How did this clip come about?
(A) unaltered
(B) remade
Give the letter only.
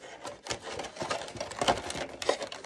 A